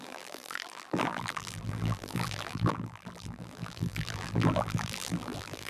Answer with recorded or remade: remade